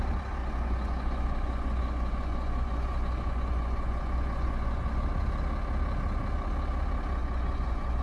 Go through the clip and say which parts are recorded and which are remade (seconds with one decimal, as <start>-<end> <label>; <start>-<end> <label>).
0.0-0.4 recorded; 0.4-5.0 remade; 5.0-7.2 recorded; 7.2-8.0 remade